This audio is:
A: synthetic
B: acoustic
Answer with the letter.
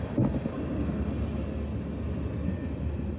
B